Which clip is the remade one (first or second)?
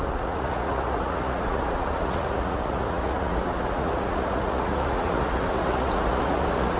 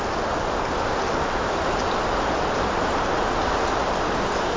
first